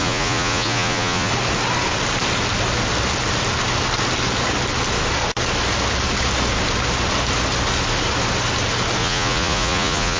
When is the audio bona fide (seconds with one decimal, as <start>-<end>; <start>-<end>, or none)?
1.3-9.0